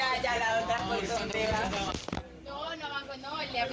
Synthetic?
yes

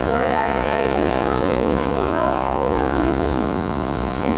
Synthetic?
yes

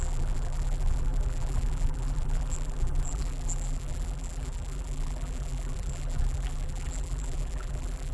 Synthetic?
yes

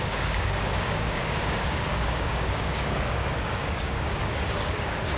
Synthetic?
yes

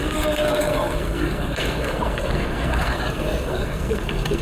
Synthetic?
yes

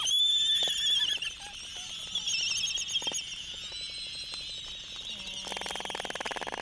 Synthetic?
no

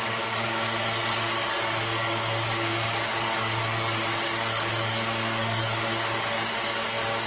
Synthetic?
yes